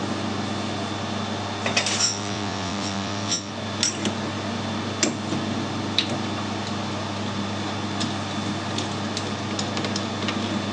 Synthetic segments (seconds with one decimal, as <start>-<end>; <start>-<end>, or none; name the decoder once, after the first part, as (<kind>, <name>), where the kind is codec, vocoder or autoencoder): 2.0-3.5 (vocoder, WaveNeXt)